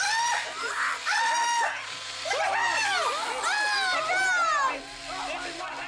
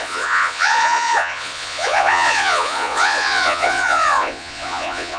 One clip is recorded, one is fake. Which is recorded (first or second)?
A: first